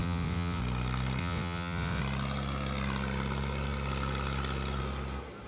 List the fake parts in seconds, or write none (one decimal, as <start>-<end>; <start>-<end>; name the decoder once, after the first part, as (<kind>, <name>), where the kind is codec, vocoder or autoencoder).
0.0-0.6 (vocoder, WaveNeXt); 1.2-2.0